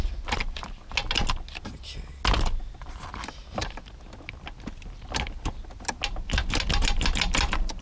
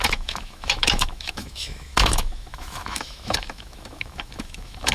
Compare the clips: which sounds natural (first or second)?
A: first